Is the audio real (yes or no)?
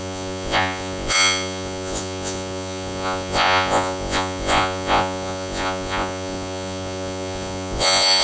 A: no